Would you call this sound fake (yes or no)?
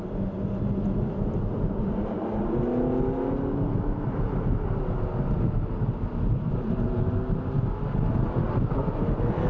no